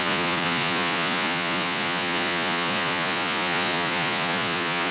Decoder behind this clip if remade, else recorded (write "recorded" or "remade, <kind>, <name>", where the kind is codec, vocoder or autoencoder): remade, vocoder, Vocos